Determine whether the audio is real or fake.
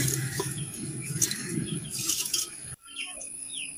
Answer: fake